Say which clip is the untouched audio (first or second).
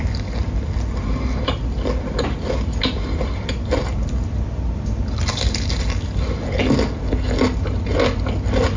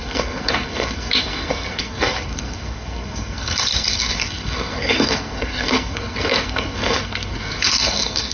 first